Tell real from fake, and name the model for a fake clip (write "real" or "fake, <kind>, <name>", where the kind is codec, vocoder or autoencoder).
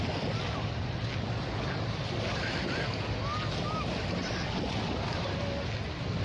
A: real